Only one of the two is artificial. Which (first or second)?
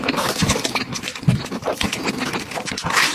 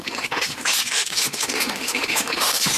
second